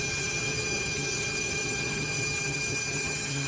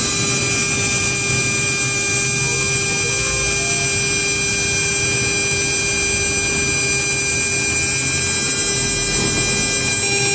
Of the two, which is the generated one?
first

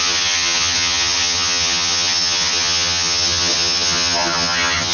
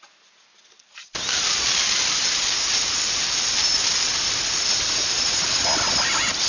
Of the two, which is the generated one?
first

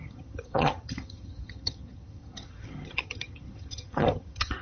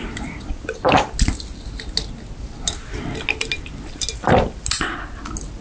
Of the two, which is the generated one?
first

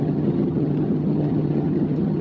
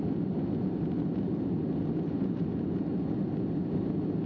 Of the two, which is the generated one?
first